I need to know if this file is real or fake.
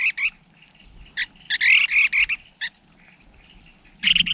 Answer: real